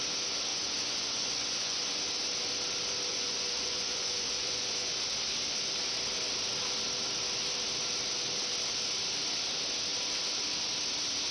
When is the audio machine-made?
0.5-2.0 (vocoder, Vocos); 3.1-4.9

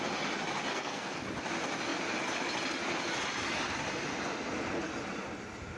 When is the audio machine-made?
0.7-1.2 (codec, SNAC)

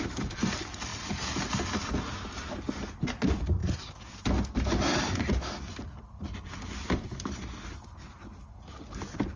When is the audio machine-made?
none

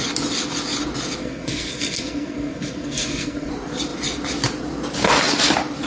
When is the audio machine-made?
1.2-3.5 (codec, SNAC)